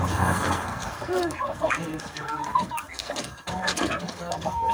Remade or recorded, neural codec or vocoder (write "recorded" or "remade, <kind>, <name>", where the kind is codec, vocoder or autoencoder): remade, codec, SNAC